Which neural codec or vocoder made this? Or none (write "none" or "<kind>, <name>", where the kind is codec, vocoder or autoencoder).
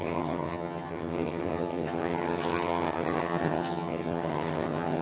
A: vocoder, HiFi-GAN